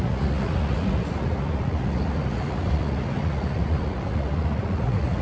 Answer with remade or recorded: remade